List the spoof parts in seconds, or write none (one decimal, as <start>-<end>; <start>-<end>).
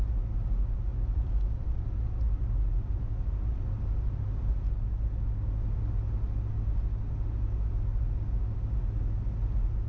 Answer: 0.9-4.7